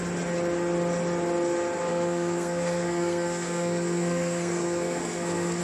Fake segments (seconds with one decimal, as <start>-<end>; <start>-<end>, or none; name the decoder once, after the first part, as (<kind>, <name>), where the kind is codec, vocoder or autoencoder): 1.9-5.6 (codec, SNAC)